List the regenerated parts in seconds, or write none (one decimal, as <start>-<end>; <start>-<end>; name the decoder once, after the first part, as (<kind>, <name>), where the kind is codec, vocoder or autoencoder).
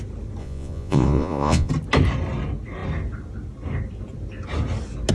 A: 0.4-1.7 (vocoder, Vocos)